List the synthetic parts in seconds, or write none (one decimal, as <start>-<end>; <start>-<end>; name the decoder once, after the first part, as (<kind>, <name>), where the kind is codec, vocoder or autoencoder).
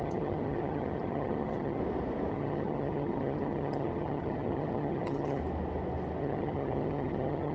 0.0-1.8 (vocoder, HiFi-GAN); 2.3-5.4; 6.2-7.5